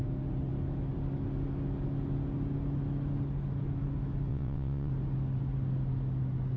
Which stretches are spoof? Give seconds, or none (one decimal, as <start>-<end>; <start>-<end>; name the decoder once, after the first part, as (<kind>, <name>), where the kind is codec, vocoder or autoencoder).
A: 4.3-4.9 (vocoder, WaveNeXt)